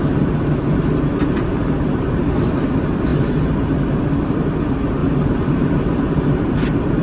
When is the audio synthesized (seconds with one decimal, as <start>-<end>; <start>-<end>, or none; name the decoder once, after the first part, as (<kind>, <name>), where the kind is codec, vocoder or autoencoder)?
1.2-2.2 (vocoder, BigVGAN v2); 3.1-4.0; 5.0-6.5